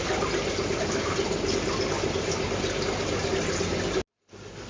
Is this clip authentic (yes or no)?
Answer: yes